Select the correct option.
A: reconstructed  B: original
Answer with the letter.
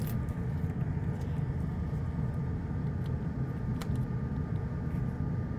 B